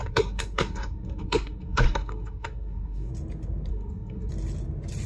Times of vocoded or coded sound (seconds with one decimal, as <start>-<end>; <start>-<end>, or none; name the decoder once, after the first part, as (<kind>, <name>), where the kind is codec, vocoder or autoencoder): 0.0-3.1 (codec, SNAC); 3.7-4.3